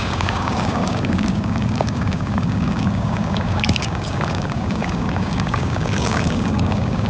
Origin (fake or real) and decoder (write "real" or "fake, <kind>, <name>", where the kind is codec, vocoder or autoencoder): fake, codec, DAC